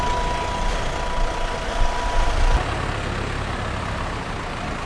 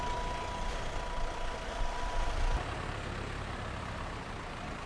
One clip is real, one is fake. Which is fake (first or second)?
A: second